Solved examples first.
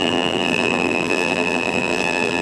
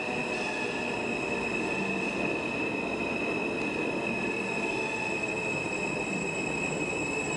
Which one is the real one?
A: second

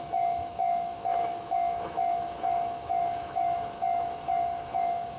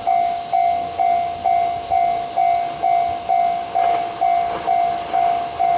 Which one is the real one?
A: second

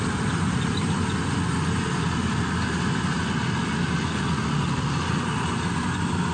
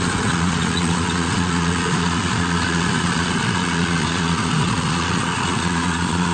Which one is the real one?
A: first